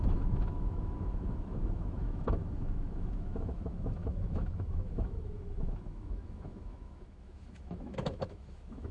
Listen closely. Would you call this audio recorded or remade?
remade